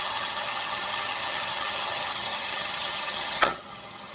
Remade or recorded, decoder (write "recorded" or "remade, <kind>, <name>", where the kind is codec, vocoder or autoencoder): remade, vocoder, HiFi-GAN